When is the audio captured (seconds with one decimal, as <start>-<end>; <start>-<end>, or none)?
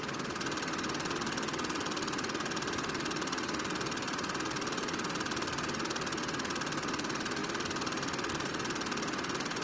0.0-9.6